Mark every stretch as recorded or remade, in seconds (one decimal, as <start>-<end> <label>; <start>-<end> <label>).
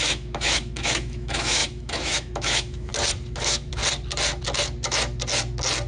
0.0-2.9 remade; 2.9-3.4 recorded; 3.4-3.8 remade; 3.8-5.9 recorded